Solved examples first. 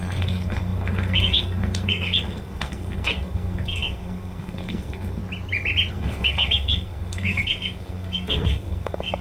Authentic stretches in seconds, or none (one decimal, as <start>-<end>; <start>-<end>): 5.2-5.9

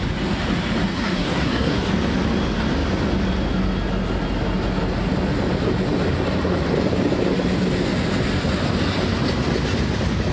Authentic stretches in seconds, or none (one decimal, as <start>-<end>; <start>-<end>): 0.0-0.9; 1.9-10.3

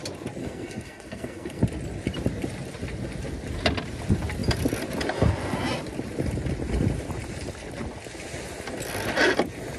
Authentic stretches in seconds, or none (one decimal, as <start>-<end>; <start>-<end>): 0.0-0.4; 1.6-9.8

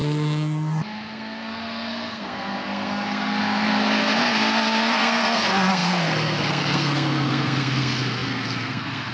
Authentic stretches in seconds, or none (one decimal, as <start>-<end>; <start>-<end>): none

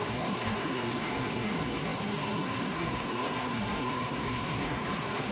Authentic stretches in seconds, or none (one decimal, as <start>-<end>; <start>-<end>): none

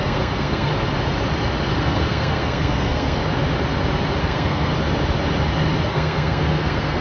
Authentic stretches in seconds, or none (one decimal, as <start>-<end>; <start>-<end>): 0.7-1.7; 3.2-4.2; 4.7-5.8